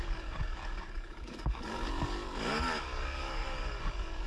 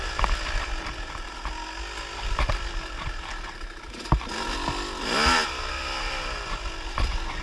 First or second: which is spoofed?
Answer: first